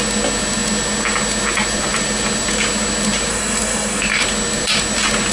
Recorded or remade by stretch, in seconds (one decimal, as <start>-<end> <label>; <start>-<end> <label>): 0.0-3.3 recorded; 3.3-4.0 remade; 4.0-5.3 recorded